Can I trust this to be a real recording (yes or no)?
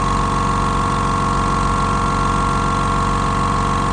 yes